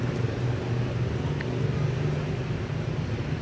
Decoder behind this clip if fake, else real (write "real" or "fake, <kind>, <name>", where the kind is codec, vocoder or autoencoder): real